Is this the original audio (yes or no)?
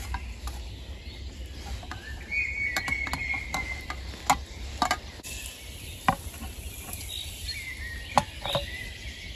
yes